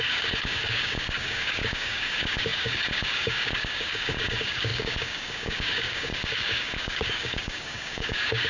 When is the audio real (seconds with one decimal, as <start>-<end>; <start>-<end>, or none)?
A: none